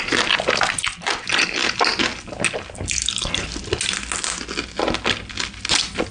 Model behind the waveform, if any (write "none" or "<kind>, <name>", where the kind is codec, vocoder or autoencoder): none